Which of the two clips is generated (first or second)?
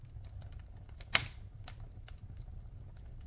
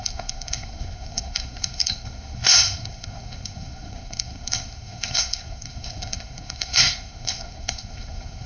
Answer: second